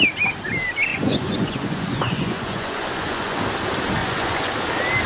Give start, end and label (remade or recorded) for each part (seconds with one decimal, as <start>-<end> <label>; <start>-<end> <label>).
0.0-0.9 recorded; 0.9-3.4 remade; 3.4-4.0 recorded; 4.0-4.5 remade; 4.5-5.1 recorded